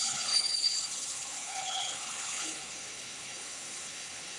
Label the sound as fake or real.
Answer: fake